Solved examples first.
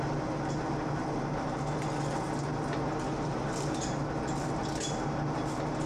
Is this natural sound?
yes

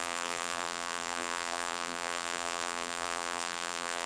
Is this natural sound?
no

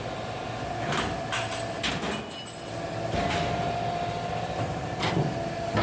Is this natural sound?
yes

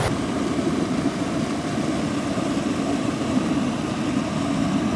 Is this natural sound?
yes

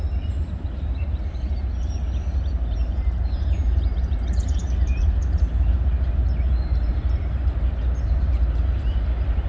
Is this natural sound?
no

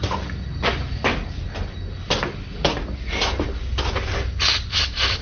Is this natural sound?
yes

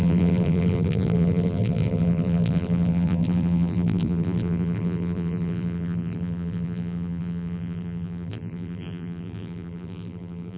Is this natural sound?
no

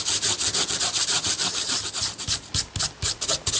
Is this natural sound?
yes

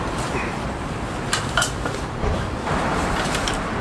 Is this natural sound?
no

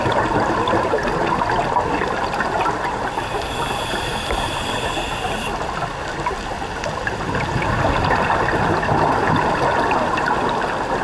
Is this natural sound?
yes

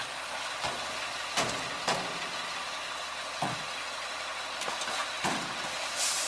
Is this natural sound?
yes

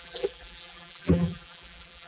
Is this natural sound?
no